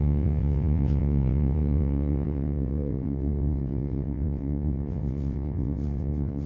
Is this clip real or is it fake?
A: fake